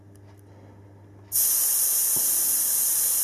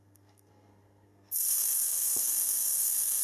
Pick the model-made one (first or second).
second